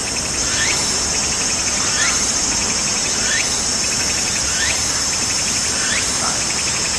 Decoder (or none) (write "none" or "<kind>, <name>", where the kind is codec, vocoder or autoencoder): none